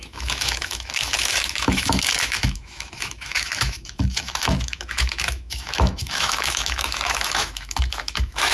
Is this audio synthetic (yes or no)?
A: yes